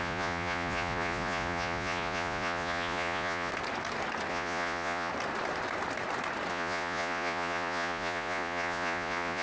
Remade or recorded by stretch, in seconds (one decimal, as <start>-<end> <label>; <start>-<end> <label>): 0.0-3.5 remade; 3.5-4.3 recorded; 4.3-5.1 remade; 5.1-6.5 recorded; 6.5-9.4 remade